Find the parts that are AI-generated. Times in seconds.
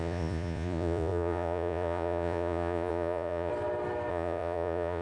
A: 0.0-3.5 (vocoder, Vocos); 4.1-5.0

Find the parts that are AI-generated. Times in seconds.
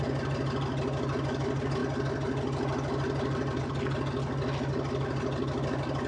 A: none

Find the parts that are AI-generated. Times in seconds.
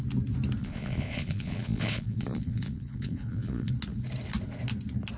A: 0.6-3.7 (vocoder, Vocos)